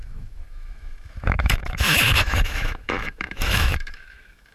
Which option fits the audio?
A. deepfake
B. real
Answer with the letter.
A